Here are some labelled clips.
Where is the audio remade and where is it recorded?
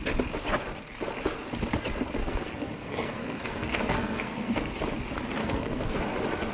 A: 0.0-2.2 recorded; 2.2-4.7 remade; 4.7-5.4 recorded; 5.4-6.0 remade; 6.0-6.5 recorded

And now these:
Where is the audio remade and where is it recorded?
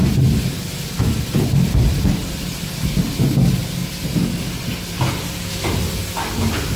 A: 0.0-6.8 recorded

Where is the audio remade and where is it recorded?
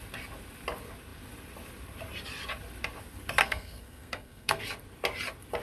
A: 0.0-3.4 recorded; 3.4-4.6 remade; 4.6-5.6 recorded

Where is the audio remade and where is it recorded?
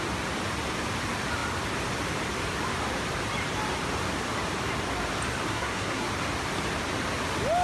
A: 0.0-5.5 recorded; 5.5-6.1 remade; 6.1-7.6 recorded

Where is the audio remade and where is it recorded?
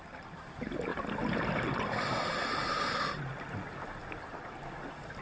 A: 0.0-5.2 recorded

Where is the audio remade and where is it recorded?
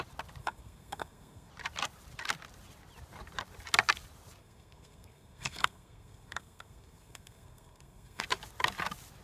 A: 0.0-0.4 recorded; 0.4-1.5 remade; 1.5-4.4 recorded; 4.4-8.2 remade; 8.2-9.2 recorded